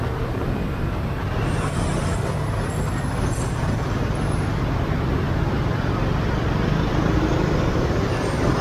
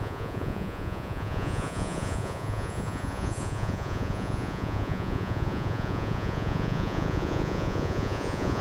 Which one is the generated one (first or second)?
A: second